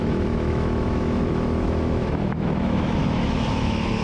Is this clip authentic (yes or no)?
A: no